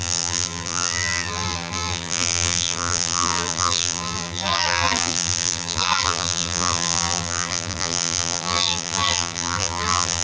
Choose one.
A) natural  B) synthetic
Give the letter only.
B